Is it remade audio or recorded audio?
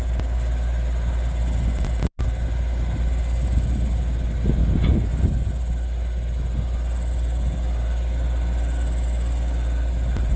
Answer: recorded